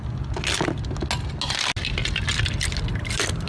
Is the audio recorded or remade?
recorded